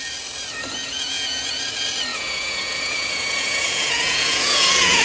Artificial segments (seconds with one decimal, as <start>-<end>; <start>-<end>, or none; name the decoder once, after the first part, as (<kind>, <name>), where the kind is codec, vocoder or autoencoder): 0.8-1.6 (vocoder, Vocos); 2.1-5.0